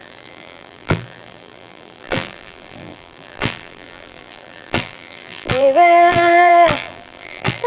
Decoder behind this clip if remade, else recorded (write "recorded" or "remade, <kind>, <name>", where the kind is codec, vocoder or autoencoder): remade, vocoder, BigVGAN v2